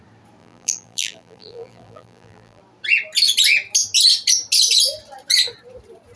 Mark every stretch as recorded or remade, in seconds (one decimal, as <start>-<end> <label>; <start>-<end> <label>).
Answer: 0.0-0.4 recorded; 0.4-2.6 remade; 2.6-6.2 recorded